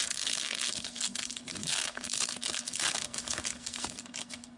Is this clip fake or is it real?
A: fake